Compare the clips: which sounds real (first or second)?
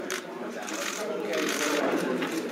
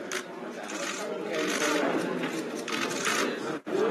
second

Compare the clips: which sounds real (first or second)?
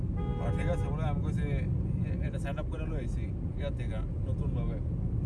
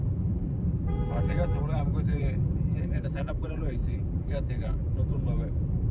first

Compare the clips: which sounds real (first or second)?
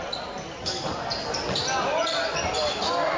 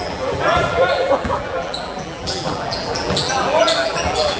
first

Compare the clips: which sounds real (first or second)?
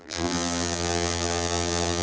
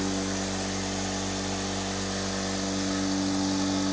second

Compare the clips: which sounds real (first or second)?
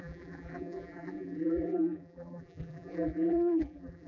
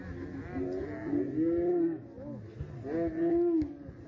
second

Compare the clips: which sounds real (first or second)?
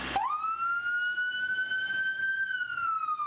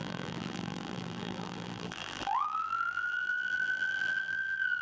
first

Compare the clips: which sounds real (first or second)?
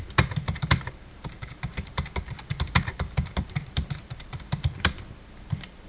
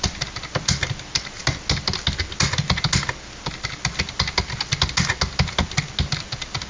second